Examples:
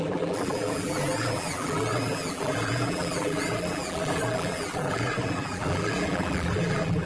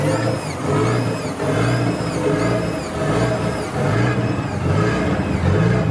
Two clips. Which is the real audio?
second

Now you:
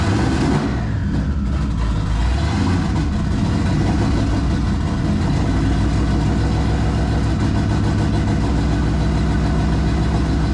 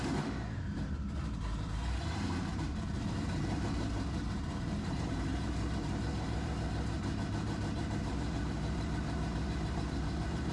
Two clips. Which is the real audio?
first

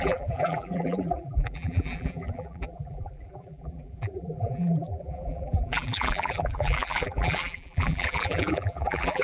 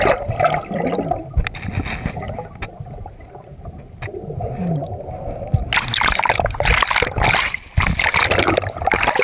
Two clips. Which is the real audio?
second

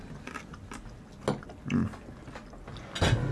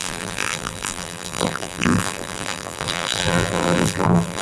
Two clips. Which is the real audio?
first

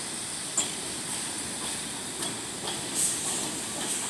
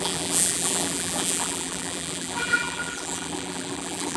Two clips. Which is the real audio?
first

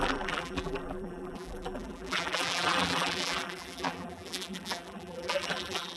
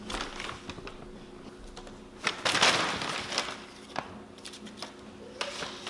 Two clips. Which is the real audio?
second